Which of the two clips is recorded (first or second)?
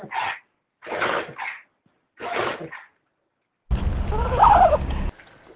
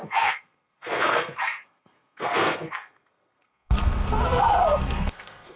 first